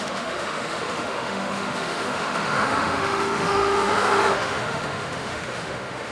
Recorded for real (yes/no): no